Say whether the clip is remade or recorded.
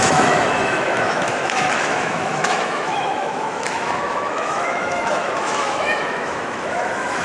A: remade